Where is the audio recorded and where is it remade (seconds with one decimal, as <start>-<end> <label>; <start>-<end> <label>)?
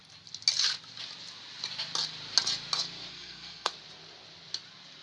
0.0-3.1 recorded; 3.1-3.7 remade; 3.7-5.0 recorded